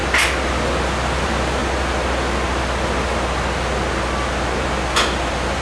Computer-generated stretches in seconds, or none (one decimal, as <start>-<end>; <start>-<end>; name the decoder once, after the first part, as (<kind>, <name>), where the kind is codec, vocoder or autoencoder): 0.8-1.6 (vocoder, BigVGAN v2); 5.0-5.6